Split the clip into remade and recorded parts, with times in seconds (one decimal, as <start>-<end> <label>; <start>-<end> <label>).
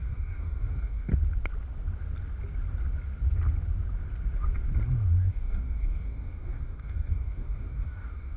0.0-1.1 remade; 1.1-5.3 recorded; 5.3-8.4 remade